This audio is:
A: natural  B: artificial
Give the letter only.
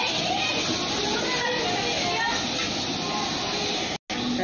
A